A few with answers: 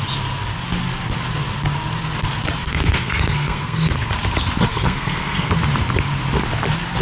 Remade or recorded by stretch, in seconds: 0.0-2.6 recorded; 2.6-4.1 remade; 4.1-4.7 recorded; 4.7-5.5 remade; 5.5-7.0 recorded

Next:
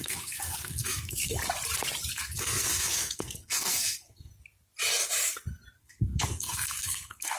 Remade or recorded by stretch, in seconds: 0.0-1.4 remade; 1.4-2.1 recorded; 2.1-4.3 remade; 4.3-5.8 recorded; 5.8-7.4 remade

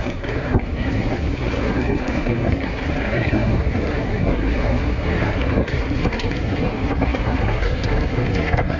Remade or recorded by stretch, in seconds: 0.0-8.8 remade